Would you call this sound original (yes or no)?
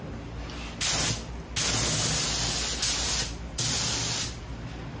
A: yes